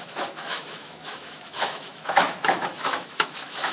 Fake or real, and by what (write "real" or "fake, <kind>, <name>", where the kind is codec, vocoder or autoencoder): fake, autoencoder, DAC-VAE